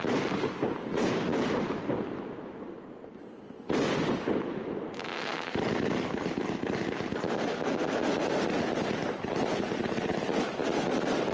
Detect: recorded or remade recorded